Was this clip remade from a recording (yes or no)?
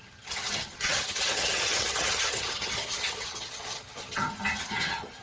yes